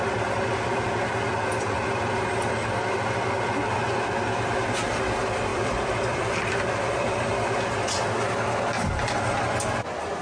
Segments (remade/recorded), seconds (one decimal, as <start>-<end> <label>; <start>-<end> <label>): 0.0-5.5 recorded; 5.5-8.0 remade; 8.0-10.2 recorded